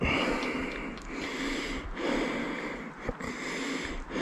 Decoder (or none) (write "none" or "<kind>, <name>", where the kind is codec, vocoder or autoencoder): none